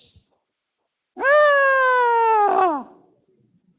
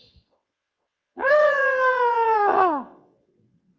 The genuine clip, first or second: first